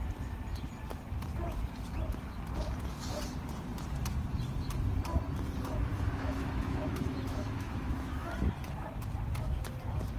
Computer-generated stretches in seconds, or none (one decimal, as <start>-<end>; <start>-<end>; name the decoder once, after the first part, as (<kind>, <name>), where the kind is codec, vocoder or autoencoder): 5.9-8.3 (autoencoder, DAC-VAE)